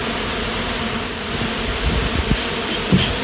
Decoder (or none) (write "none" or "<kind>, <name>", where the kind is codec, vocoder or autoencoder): none